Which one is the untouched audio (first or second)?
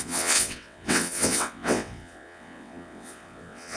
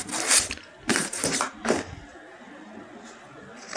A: second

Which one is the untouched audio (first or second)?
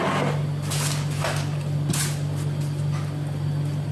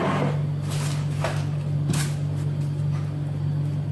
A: first